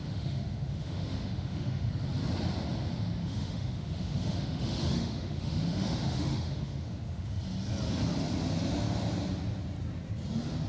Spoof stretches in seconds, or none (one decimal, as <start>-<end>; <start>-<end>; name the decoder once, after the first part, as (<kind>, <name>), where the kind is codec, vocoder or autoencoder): 0.0-1.9 (autoencoder, DAC-VAE); 3.2-7.4